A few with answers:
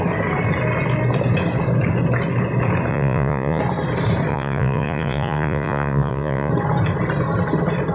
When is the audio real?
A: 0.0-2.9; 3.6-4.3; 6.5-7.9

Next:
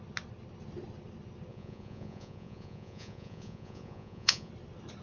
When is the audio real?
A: 0.0-1.5; 4.5-5.0

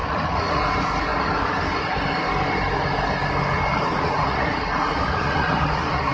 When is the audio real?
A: 0.6-3.7

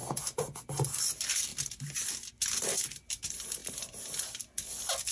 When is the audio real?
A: 0.6-5.1